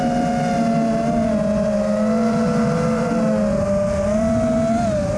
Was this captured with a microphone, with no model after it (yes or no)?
yes